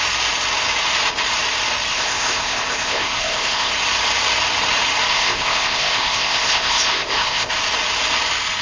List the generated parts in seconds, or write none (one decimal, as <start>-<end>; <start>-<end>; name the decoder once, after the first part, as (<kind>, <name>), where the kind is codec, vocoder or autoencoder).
1.9-3.7 (codec, ZipCodec); 5.1-7.5